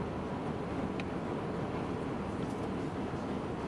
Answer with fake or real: real